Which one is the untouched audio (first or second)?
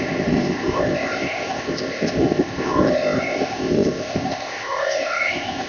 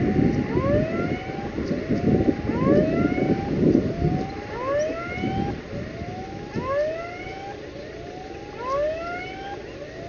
second